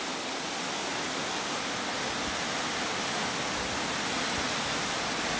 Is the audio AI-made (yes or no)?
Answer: no